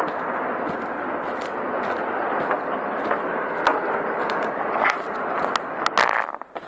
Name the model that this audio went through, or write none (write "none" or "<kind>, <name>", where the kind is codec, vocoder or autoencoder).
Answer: none